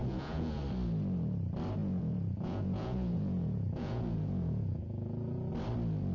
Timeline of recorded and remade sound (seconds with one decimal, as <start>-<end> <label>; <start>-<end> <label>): 0.0-0.6 remade; 0.6-1.8 recorded; 1.8-5.5 remade; 5.5-6.1 recorded

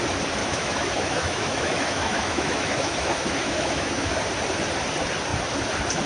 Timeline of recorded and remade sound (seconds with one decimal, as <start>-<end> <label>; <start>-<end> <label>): 0.0-0.4 recorded; 0.4-4.1 remade; 4.1-6.1 recorded

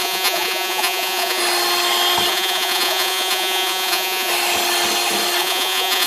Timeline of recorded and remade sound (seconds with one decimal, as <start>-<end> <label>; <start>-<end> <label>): 0.0-1.4 remade; 1.4-2.3 recorded; 2.3-4.3 remade; 4.3-5.4 recorded; 5.4-6.1 remade

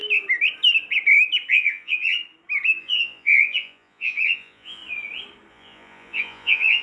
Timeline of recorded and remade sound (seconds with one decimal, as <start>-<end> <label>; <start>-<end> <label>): 0.0-1.5 recorded; 1.5-2.2 remade; 2.2-2.8 recorded; 2.8-4.8 remade; 4.8-5.5 recorded; 5.5-6.8 remade